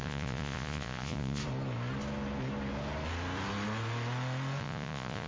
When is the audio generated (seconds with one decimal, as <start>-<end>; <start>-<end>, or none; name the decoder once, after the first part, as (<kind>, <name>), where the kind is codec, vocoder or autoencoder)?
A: 0.0-1.4 (vocoder, Vocos); 4.6-5.3